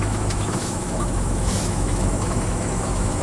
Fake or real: fake